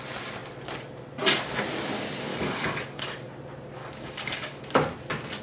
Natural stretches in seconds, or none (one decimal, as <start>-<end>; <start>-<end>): 0.0-2.3; 3.3-3.8; 4.6-5.4